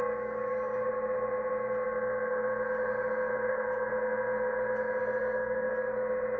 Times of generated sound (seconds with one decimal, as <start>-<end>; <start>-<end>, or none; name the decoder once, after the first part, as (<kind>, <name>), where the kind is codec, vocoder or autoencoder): 0.0-0.9 (codec, DAC); 3.5-3.9; 5.2-5.7